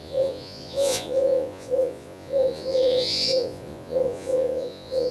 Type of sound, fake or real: fake